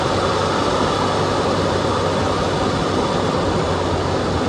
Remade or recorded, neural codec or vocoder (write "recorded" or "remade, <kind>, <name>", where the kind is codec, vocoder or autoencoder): recorded